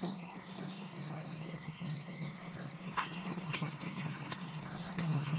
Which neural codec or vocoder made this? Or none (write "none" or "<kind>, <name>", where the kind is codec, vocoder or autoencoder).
codec, SNAC